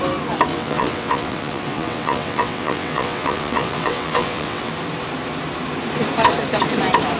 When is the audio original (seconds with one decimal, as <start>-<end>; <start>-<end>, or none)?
0.0-0.5; 4.7-7.2